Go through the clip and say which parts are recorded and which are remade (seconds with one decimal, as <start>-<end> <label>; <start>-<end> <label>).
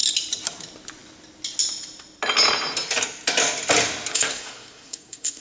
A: 0.0-4.1 recorded; 4.1-5.4 remade